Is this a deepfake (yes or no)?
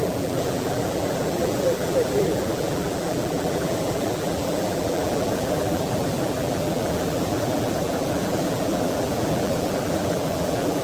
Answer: yes